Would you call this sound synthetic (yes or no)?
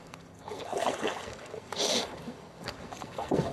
yes